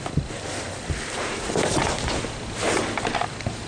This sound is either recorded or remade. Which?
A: recorded